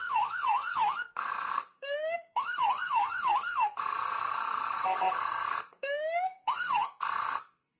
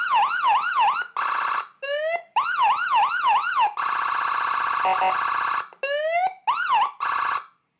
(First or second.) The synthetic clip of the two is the first